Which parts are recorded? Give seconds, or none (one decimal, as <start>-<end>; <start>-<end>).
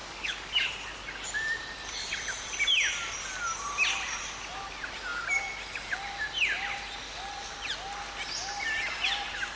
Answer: 0.7-9.6